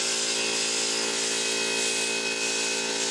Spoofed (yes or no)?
no